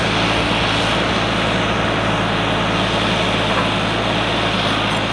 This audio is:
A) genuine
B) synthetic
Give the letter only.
A